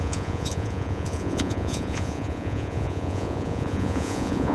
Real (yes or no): no